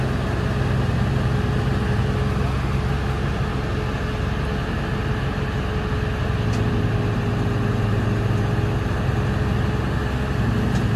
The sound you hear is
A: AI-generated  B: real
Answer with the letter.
B